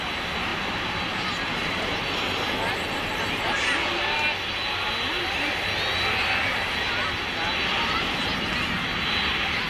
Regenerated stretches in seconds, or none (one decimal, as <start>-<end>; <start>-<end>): none